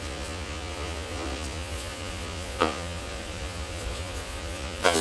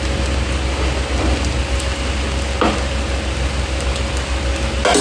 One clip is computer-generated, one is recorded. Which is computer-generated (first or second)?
first